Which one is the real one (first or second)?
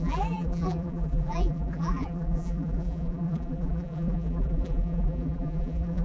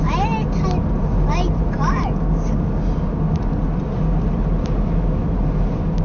second